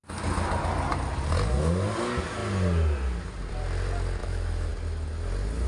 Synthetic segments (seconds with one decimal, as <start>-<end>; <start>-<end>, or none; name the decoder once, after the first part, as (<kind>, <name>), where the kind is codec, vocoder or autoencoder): 4.2-4.7 (autoencoder, DAC-VAE)